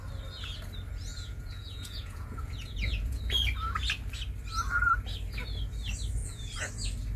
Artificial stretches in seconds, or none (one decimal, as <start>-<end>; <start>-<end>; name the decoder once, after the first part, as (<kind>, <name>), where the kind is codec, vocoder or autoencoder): 1.1-3.2 (vocoder, Vocos); 6.2-6.7